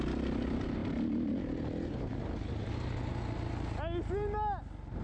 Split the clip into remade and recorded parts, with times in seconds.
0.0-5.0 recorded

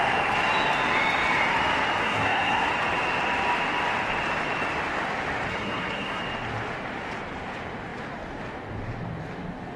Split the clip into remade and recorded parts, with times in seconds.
0.0-2.0 recorded; 2.0-2.7 remade; 2.7-5.5 recorded; 5.5-6.2 remade; 6.2-9.8 recorded